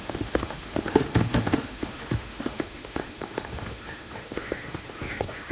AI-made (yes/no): yes